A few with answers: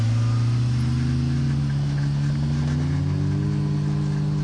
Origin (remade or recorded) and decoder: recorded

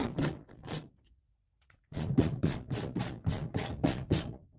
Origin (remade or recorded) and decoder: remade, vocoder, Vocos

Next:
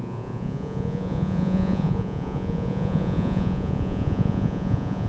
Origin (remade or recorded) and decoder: remade, vocoder, Vocos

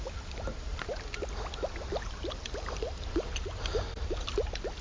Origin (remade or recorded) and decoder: recorded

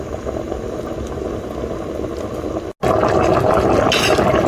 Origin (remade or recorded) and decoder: recorded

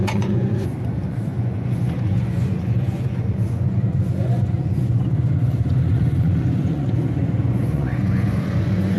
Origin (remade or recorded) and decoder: remade, vocoder, Vocos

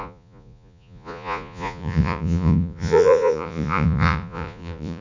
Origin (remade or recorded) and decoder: remade, vocoder, Vocos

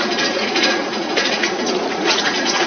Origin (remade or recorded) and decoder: remade, vocoder, Vocos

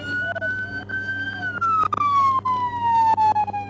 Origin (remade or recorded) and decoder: recorded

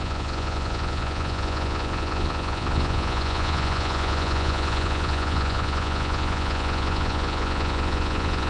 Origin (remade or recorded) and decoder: remade, vocoder, Vocos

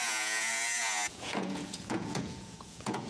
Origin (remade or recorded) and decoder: remade, vocoder, Vocos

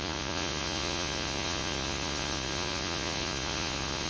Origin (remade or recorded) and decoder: remade, vocoder, Vocos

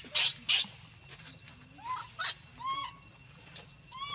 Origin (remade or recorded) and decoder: recorded